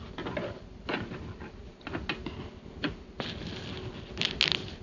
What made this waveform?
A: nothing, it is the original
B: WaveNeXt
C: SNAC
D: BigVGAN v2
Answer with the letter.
A